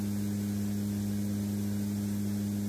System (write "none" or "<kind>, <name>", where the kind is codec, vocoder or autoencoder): none